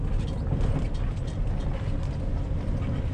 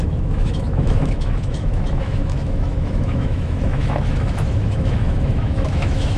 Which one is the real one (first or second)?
first